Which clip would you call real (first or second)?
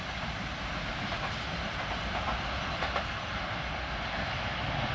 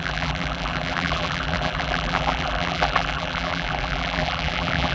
first